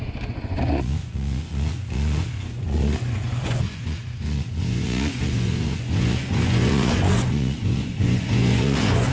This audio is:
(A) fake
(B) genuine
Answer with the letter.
A